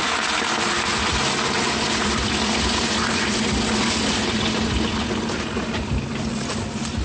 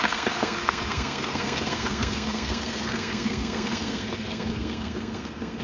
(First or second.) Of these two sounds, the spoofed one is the second